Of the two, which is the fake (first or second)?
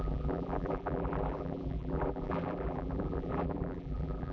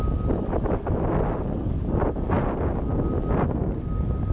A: first